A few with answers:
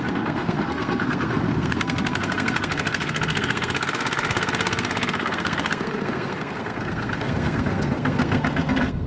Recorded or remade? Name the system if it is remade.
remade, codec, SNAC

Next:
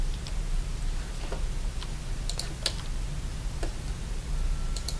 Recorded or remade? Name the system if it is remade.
recorded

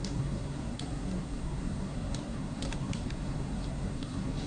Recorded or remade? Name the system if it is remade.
remade, codec, SNAC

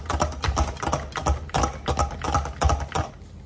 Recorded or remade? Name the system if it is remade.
recorded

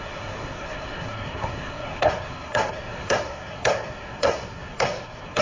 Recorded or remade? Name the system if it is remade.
remade, codec, SNAC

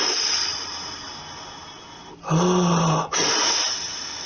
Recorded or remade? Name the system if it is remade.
recorded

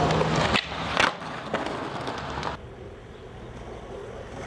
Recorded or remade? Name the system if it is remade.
recorded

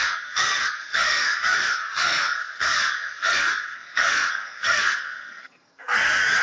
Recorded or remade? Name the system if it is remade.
remade, codec, SNAC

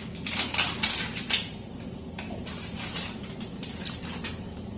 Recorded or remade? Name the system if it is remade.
recorded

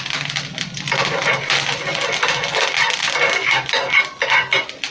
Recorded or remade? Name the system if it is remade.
recorded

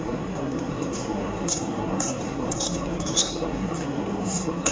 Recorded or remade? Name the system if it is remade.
remade, codec, SNAC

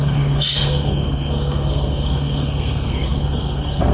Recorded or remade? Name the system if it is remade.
remade, codec, SNAC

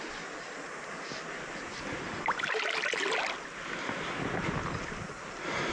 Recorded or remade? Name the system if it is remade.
recorded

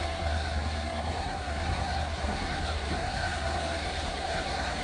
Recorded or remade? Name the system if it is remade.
remade, codec, SNAC